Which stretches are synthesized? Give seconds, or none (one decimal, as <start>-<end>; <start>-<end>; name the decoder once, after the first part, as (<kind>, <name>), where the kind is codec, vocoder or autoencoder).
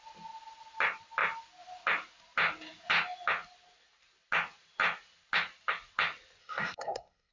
6.4-7.3 (codec, SNAC)